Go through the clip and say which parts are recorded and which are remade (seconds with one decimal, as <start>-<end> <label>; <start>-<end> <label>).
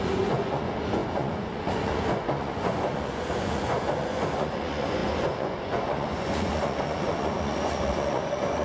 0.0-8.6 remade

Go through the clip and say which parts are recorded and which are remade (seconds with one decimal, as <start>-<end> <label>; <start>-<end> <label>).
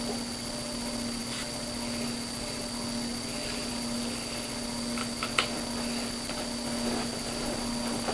0.0-8.1 recorded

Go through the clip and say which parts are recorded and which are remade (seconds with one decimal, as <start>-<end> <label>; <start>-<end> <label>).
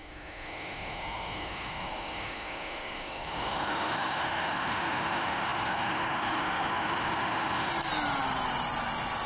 0.0-7.7 remade; 7.7-9.3 recorded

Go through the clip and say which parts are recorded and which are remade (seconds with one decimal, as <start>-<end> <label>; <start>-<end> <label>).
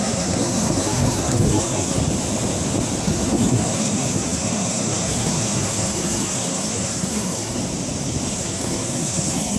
0.0-2.0 remade; 2.0-3.0 recorded; 3.0-7.6 remade; 7.6-8.3 recorded; 8.3-9.6 remade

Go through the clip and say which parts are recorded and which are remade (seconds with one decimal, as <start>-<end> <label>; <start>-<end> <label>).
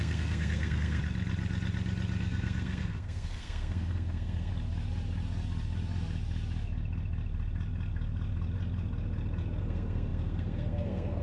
0.0-1.0 remade; 1.0-2.2 recorded; 2.2-4.5 remade; 4.5-9.6 recorded; 9.6-11.2 remade